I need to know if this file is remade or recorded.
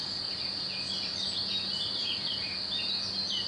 recorded